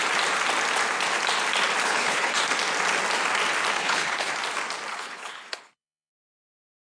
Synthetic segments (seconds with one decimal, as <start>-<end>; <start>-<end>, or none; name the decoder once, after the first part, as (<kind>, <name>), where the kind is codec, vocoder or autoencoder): 1.8-2.4 (codec, HILCodec); 3.8-4.3; 4.9-6.1